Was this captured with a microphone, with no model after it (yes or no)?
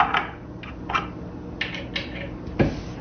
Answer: yes